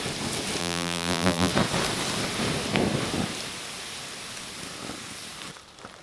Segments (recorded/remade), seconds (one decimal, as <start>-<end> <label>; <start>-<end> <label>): 0.0-0.6 recorded; 0.6-1.5 remade; 1.5-6.0 recorded